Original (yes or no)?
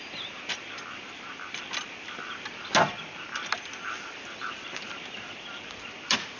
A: yes